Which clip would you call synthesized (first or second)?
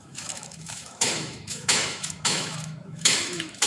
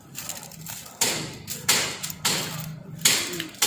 first